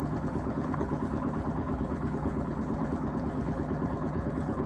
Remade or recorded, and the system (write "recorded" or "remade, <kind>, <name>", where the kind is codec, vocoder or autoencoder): remade, codec, HILCodec